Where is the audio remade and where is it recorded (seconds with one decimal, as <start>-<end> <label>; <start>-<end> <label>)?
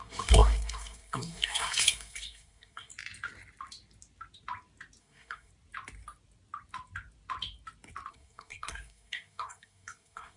0.0-2.9 remade; 2.9-5.0 recorded; 5.0-5.5 remade; 5.5-8.1 recorded; 8.1-10.4 remade